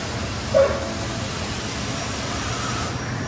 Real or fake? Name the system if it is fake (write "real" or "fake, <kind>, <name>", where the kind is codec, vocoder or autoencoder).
real